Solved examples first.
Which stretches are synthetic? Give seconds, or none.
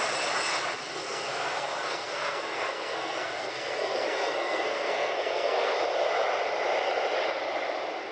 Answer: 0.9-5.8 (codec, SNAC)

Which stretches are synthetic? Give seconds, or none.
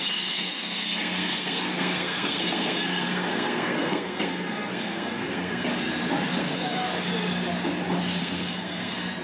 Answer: 0.0-5.7 (codec, SNAC); 6.4-6.9; 8.2-9.2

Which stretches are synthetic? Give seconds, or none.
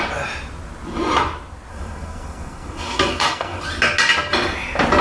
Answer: 1.7-3.6 (codec, SNAC)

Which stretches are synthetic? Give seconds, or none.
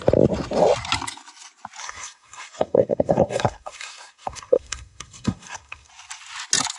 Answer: 1.8-5.9 (codec, SNAC)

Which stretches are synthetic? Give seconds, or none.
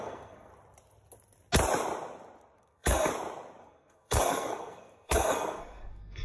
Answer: 0.0-0.5 (codec, SNAC); 2.6-3.1; 3.6-6.2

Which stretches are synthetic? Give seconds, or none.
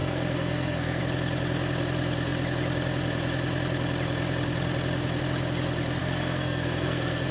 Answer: 0.0-1.0 (codec, SNAC); 6.0-7.3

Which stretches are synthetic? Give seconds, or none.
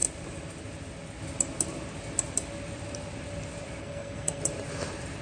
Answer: 3.8-4.4 (codec, SNAC)